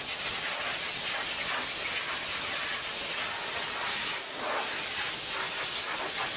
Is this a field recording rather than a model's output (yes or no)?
yes